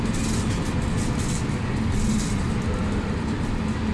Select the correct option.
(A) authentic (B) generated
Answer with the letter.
A